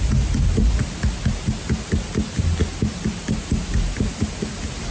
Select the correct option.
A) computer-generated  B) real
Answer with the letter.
B